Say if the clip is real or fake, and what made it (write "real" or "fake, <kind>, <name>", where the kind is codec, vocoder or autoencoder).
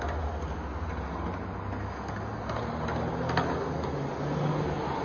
real